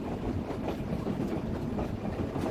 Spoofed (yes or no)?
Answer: no